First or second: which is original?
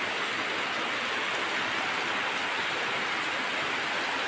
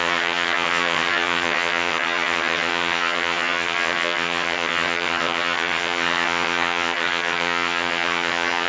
first